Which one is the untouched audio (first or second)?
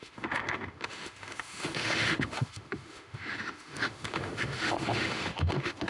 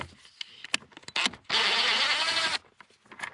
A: second